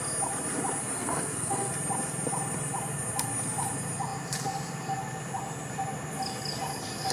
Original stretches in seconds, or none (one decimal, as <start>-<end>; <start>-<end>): 0.0-1.0; 1.7-7.1